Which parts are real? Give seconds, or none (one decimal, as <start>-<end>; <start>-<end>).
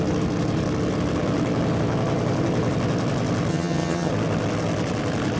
0.0-3.5; 4.1-5.4